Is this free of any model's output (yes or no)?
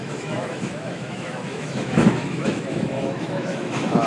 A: no